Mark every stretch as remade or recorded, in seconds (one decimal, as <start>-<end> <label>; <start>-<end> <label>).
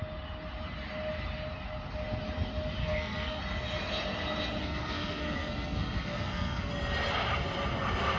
0.0-2.8 recorded; 2.8-3.4 remade; 3.4-4.6 recorded; 4.6-6.7 remade; 6.7-8.2 recorded